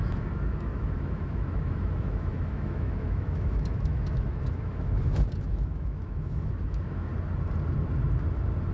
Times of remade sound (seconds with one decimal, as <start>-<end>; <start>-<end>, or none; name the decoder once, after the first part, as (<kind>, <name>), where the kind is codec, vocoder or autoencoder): 0.0-7.1 (autoencoder, DAC-VAE)